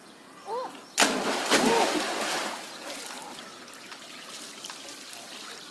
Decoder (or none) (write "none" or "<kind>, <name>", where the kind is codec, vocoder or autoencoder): none